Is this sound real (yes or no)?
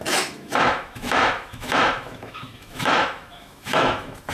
no